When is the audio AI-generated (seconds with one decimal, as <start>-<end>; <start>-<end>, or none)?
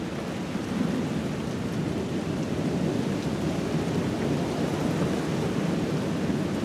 none